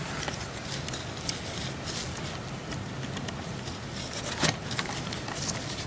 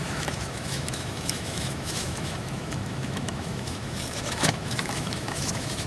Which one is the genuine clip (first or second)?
first